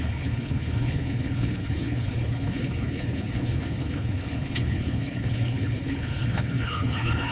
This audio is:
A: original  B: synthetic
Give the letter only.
B